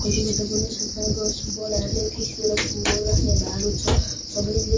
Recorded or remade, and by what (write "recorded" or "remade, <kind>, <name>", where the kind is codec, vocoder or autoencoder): recorded